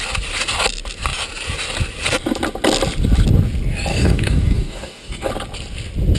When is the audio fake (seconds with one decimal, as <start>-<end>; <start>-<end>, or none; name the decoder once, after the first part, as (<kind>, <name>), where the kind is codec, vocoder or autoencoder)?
3.9-5.3 (codec, DAC)

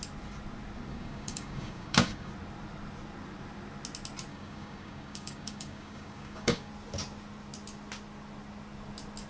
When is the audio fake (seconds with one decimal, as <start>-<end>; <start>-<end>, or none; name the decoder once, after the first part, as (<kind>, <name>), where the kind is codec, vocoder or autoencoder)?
0.9-2.3 (codec, DAC); 4.3-6.7

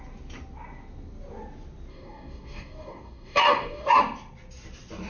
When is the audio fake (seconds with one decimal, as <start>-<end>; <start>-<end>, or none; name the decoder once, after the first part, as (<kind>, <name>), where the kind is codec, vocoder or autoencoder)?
1.9-4.0 (codec, DAC)

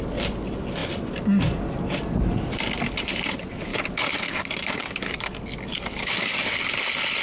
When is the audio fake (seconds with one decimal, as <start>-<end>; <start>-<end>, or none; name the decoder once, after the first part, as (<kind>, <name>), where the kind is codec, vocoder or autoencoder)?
3.7-6.6 (codec, DAC)

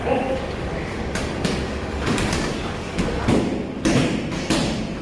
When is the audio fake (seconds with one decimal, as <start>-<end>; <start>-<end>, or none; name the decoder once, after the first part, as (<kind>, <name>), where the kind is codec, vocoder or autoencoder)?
0.0-3.0 (codec, DAC)

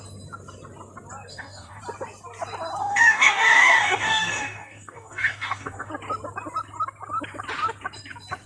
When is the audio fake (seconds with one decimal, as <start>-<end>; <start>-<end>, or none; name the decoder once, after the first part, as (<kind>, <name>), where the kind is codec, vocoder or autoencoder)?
1.3-1.8 (codec, DAC); 2.8-5.9